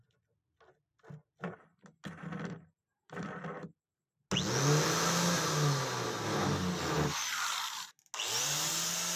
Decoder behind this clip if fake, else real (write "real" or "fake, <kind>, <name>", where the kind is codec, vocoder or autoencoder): real